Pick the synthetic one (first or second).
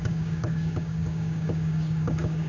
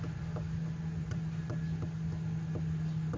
first